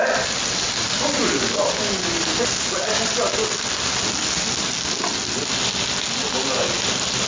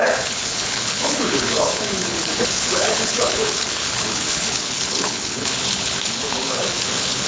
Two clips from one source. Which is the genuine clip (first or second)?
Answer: first